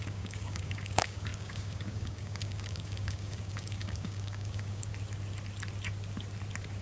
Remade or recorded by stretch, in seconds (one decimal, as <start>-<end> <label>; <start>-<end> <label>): 0.0-4.9 remade; 4.9-6.8 recorded